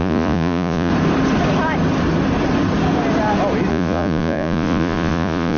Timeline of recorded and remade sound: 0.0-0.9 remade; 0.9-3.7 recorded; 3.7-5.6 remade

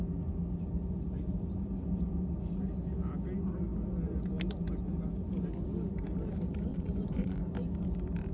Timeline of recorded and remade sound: 0.0-6.7 recorded; 6.7-7.5 remade; 7.5-8.3 recorded

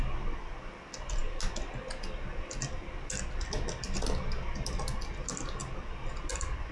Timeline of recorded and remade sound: 0.0-6.7 recorded

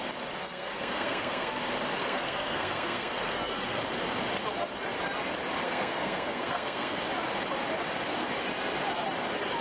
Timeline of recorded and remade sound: 0.0-0.4 recorded; 0.4-1.5 remade; 1.5-2.0 recorded; 2.0-3.8 remade; 3.8-5.6 recorded; 5.6-7.0 remade; 7.0-9.6 recorded

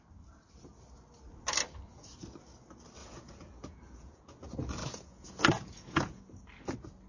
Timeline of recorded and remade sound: 0.0-3.0 recorded; 3.0-4.2 remade; 4.2-4.8 recorded; 4.8-6.2 remade; 6.2-7.1 recorded

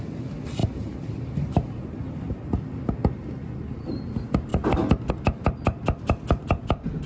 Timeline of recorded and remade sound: 0.0-7.1 recorded